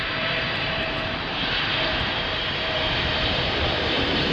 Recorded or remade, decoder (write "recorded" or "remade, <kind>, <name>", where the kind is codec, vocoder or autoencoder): remade, vocoder, BigVGAN v2